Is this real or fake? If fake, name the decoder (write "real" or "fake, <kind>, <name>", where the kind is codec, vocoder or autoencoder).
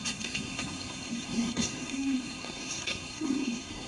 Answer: fake, codec, SNAC